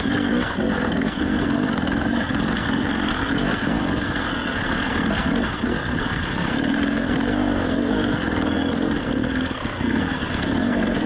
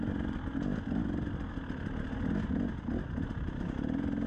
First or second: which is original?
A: second